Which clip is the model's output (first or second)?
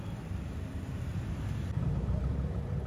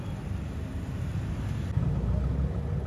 first